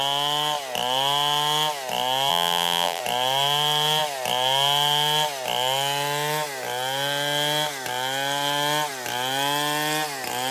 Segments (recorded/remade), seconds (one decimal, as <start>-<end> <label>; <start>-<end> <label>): 0.0-2.3 recorded; 2.3-3.0 remade; 3.0-10.5 recorded